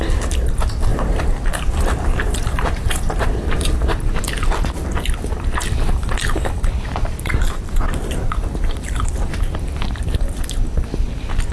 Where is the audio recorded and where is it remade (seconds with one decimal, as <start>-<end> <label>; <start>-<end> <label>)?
0.0-0.9 recorded; 0.9-4.2 remade; 4.2-5.6 recorded; 5.6-10.0 remade; 10.0-11.5 recorded